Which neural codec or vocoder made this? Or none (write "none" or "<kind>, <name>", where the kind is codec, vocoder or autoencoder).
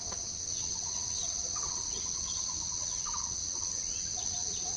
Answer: vocoder, WaveNeXt